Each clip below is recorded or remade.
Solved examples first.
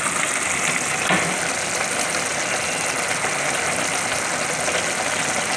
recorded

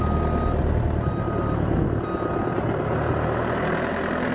recorded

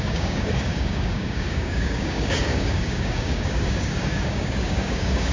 remade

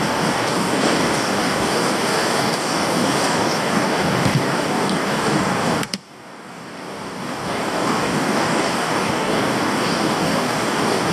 remade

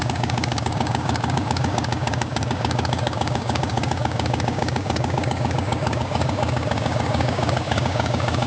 remade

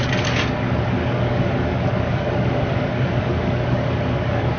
remade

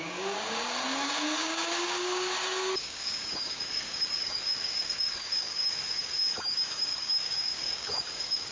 remade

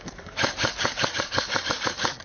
remade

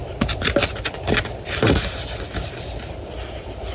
recorded